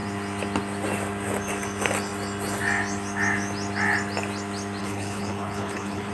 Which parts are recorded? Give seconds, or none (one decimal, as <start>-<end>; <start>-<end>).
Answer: 0.0-4.8